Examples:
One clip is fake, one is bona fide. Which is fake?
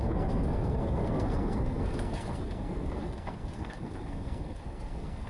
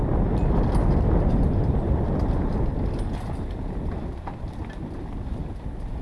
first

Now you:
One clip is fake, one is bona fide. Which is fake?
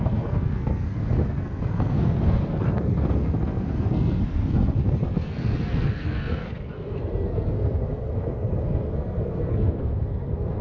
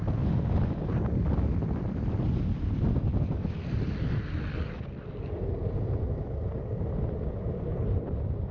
first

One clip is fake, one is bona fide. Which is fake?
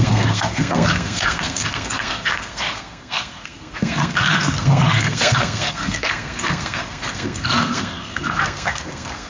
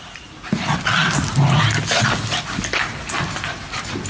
first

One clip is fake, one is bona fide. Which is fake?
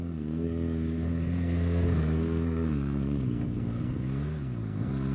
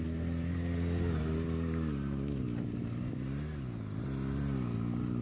first